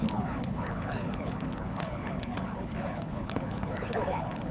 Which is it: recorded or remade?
remade